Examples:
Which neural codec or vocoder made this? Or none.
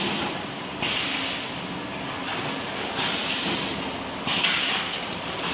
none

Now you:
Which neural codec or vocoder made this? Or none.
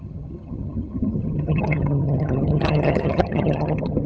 vocoder, HiFi-GAN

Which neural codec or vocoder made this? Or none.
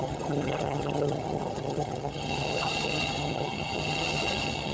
vocoder, HiFi-GAN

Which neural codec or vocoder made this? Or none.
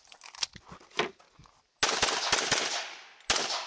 none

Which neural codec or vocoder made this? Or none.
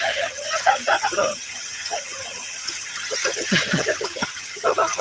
vocoder, HiFi-GAN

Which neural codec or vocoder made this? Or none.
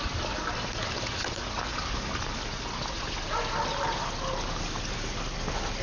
none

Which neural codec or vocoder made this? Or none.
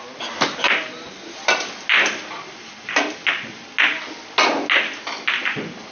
none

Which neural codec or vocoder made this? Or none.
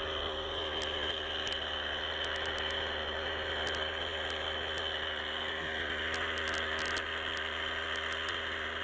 none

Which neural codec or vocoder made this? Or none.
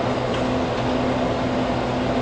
none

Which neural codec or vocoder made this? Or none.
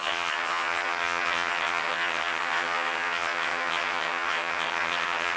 vocoder, HiFi-GAN